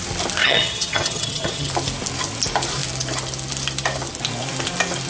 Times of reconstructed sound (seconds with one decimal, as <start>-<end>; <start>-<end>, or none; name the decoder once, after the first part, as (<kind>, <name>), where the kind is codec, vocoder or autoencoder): 0.4-1.7 (vocoder, HiFi-GAN)